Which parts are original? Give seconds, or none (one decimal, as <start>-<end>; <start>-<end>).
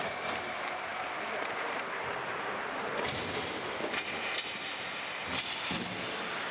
0.0-0.9; 3.6-6.5